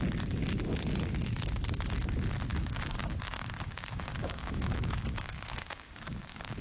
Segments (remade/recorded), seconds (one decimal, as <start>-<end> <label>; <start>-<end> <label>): 0.0-2.5 recorded; 2.5-6.6 remade